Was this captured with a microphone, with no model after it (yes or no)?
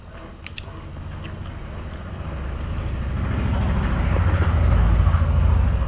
yes